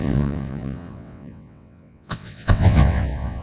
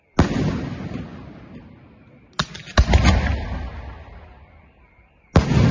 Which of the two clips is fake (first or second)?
first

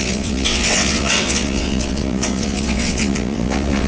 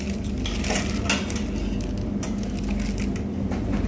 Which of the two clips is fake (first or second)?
first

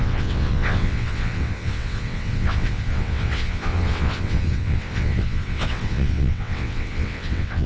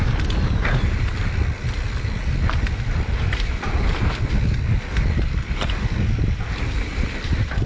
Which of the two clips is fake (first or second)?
first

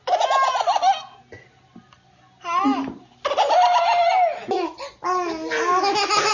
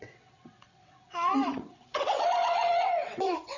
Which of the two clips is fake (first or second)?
second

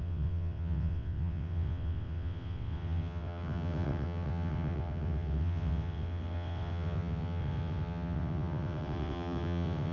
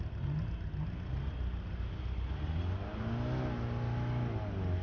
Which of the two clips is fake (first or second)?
first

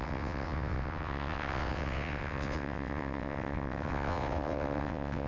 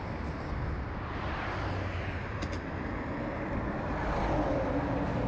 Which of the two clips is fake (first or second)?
first